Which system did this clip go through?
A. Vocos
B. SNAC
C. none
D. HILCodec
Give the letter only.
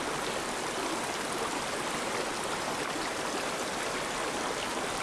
C